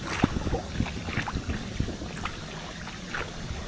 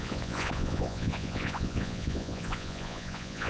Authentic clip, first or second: first